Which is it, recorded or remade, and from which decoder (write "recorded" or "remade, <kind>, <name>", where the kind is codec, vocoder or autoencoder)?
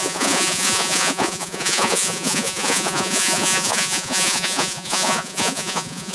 remade, vocoder, Vocos